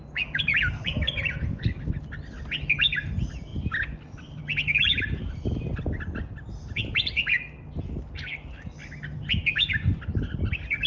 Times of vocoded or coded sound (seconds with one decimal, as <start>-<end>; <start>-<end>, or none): 3.5-4.4